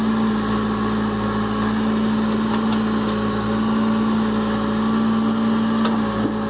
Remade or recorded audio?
recorded